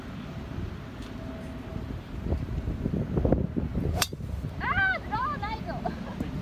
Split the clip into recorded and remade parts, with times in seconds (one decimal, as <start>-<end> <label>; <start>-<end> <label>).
0.0-1.7 recorded; 1.7-2.9 remade; 2.9-3.7 recorded; 3.7-5.9 remade; 5.9-6.4 recorded